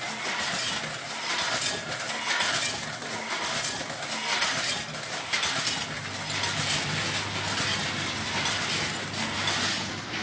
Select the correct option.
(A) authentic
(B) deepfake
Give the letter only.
A